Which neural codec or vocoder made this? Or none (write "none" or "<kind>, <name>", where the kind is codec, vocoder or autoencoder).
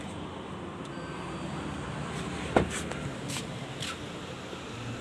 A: none